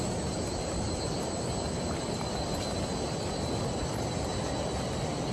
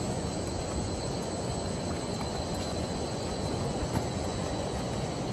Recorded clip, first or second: first